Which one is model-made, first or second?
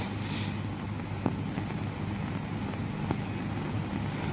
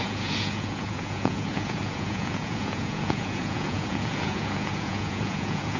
second